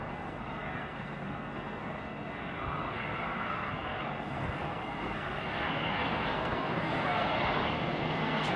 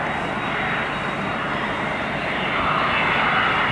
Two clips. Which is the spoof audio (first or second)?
first